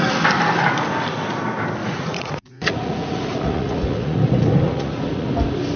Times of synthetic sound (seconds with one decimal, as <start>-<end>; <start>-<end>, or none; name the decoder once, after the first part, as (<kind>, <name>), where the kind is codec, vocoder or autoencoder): 1.8-5.3 (vocoder, Vocos)